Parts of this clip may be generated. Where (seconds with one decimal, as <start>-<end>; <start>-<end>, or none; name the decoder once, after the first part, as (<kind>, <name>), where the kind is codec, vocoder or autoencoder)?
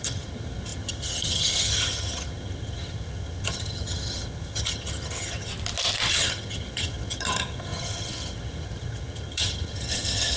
0.0-5.5 (vocoder, HiFi-GAN); 6.1-10.4